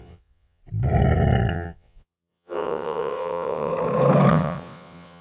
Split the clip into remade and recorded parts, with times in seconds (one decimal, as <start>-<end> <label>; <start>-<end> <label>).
0.0-0.6 remade; 0.6-1.5 recorded; 1.5-3.7 remade; 3.7-4.3 recorded; 4.3-5.2 remade

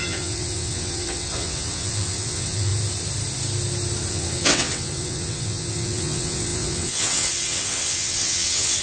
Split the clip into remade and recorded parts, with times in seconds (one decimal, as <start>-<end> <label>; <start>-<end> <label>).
0.0-2.7 remade; 2.7-4.1 recorded; 4.1-8.8 remade

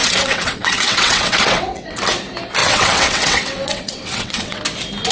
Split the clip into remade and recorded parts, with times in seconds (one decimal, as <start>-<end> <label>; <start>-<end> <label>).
0.0-2.0 remade; 2.0-2.6 recorded; 2.6-4.6 remade; 4.6-5.1 recorded

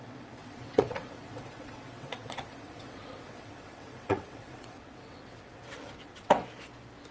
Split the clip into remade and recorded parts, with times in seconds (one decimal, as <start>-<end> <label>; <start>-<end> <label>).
0.0-6.4 remade; 6.4-7.1 recorded

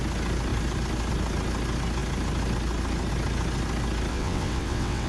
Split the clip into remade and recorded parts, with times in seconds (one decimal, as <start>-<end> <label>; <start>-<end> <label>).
0.0-4.1 recorded; 4.1-5.1 remade

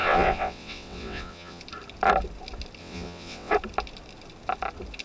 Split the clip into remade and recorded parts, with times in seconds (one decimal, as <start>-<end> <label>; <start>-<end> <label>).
0.0-1.6 remade; 1.6-2.8 recorded; 2.8-3.5 remade; 3.5-5.0 recorded

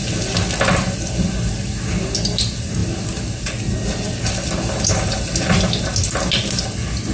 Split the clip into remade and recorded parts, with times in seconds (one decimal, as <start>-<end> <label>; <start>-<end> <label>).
0.0-7.1 recorded